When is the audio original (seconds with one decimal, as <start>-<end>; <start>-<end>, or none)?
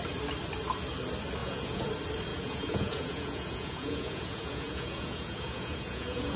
0.0-1.4; 1.9-2.3